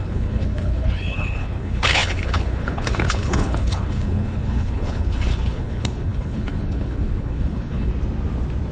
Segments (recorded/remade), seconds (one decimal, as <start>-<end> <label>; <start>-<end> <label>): 0.0-7.9 remade; 7.9-8.7 recorded

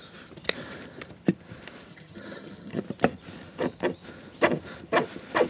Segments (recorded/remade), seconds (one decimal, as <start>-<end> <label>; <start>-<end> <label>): 0.0-1.9 recorded; 1.9-2.8 remade; 2.8-5.5 recorded